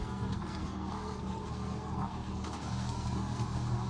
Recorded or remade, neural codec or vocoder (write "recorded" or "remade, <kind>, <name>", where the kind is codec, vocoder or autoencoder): remade, codec, SNAC